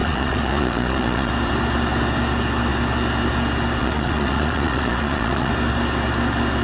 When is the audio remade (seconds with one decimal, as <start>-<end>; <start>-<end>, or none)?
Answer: 0.0-1.3; 3.8-5.5